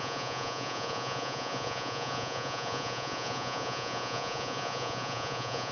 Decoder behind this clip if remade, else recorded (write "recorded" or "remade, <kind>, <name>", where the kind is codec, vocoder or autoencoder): remade, vocoder, Vocos